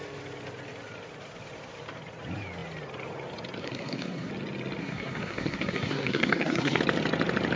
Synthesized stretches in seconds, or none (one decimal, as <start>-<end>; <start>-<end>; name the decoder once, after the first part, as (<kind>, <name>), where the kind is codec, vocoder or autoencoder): 3.6-4.3 (codec, SNAC); 4.8-6.8